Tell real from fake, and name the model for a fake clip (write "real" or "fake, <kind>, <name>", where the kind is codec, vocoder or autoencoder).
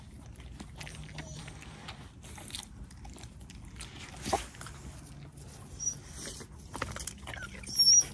real